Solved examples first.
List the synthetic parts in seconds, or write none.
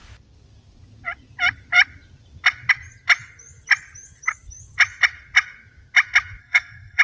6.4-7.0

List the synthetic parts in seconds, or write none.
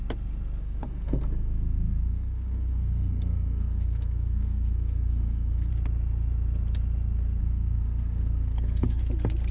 0.6-5.7; 7.4-9.0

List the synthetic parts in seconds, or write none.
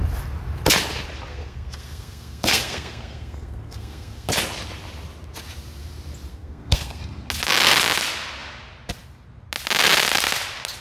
1.3-4.3; 6.3-7.0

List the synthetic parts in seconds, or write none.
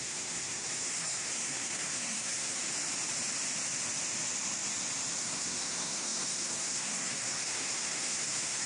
0.0-2.6; 5.2-8.7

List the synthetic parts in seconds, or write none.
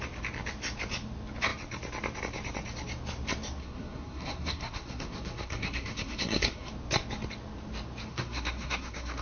3.6-6.7; 8.1-9.2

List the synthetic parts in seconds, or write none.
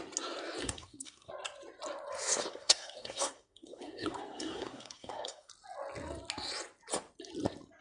0.6-1.3; 2.5-5.5